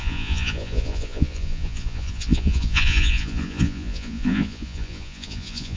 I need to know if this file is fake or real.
fake